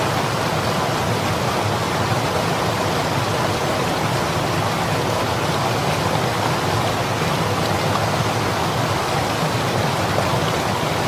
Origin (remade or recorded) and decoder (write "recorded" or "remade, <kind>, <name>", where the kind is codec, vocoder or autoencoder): recorded